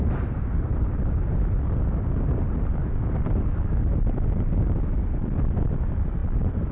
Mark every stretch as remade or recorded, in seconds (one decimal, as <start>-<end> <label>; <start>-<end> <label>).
0.0-6.7 remade